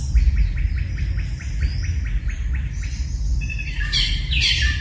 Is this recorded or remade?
recorded